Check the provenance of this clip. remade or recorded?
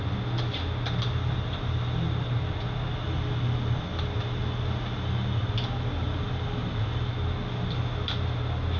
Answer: recorded